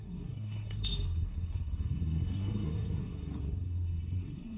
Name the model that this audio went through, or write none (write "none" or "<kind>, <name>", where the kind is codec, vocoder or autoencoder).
codec, SNAC